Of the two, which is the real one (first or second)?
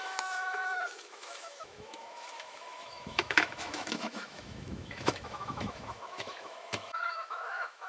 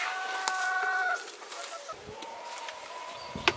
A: second